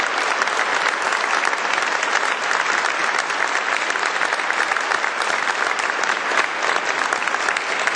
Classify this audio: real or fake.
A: real